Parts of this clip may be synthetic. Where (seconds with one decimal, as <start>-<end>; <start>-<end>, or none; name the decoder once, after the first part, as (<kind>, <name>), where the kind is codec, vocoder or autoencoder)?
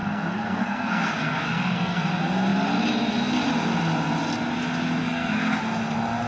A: 0.0-2.1 (codec, SNAC); 5.0-5.6